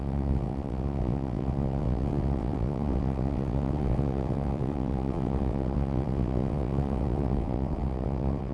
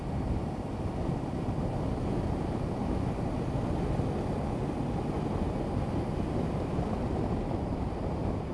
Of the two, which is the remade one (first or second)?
first